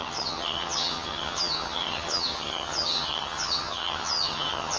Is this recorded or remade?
remade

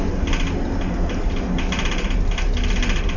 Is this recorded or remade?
recorded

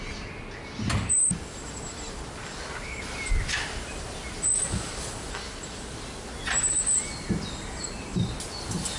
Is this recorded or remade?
recorded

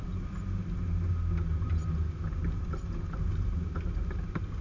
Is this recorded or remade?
recorded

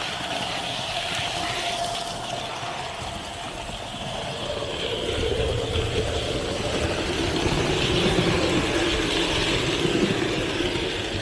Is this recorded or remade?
recorded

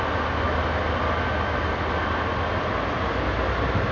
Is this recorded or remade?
recorded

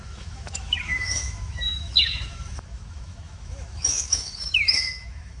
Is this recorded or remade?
remade